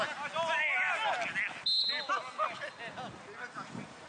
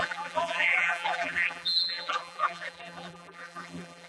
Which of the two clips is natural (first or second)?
first